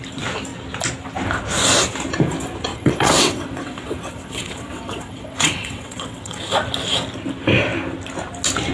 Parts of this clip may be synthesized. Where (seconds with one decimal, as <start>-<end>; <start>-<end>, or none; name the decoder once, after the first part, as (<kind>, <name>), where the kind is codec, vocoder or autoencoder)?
2.7-6.4 (vocoder, WaveNeXt)